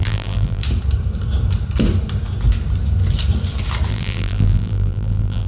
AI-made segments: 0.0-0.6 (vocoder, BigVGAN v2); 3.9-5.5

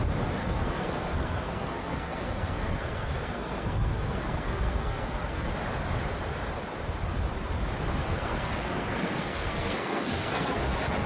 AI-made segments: 0.4-5.5 (codec, SNAC); 8.0-11.1

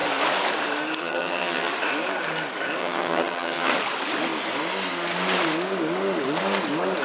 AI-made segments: 1.0-1.7 (vocoder, HiFi-GAN); 2.8-3.7

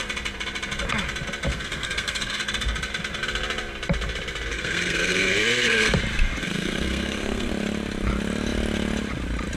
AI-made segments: 1.5-2.4 (codec, SNAC); 4.5-6.0; 6.4-7.5

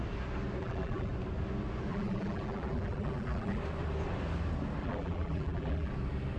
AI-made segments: 0.6-1.1 (vocoder, BigVGAN v2); 1.9-3.6; 4.8-5.9

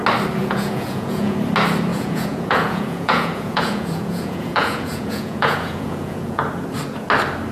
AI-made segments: 0.4-1.4 (vocoder, Vocos); 1.9-6.4

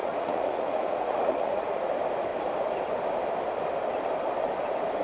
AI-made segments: 0.0-1.9 (vocoder, Vocos)